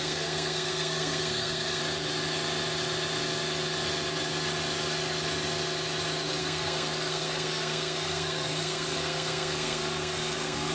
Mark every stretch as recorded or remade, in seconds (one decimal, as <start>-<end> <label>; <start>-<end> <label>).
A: 0.0-1.8 remade; 1.8-6.4 recorded; 6.4-10.7 remade